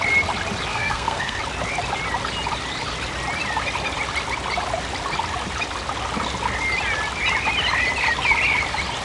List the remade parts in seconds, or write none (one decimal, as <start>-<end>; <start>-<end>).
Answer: 0.7-1.4